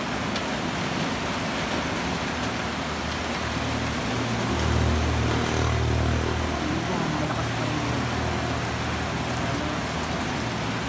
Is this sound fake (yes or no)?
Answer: no